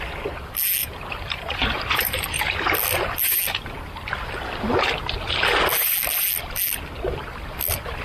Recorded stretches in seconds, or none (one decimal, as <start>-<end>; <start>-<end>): 0.0-0.8; 2.4-8.0